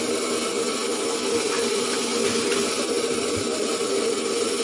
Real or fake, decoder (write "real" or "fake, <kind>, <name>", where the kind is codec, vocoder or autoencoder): real